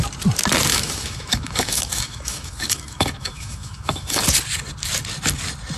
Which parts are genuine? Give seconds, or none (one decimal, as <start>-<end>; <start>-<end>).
0.0-0.7; 4.2-5.8

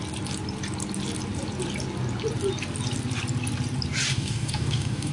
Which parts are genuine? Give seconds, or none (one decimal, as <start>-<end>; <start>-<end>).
0.0-4.1

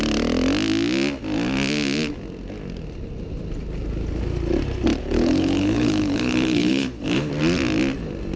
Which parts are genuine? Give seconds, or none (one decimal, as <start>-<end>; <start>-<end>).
0.0-5.0; 7.3-8.4

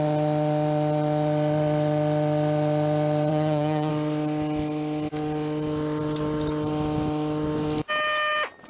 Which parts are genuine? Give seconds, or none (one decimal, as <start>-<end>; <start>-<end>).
0.0-3.3; 3.9-8.7

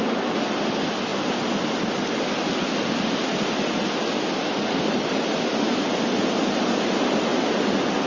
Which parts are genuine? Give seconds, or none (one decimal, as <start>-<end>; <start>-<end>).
0.0-8.1

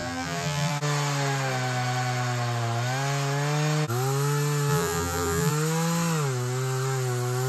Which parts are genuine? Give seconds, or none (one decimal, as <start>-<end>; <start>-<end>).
0.7-4.7; 5.5-7.5